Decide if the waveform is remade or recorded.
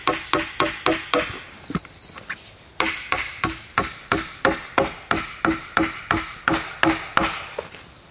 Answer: recorded